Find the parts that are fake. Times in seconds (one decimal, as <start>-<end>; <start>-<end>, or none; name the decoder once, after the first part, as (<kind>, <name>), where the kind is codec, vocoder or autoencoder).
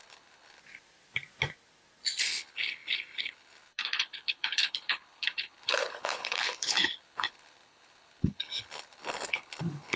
0.0-0.6 (codec, HILCodec); 2.2-10.0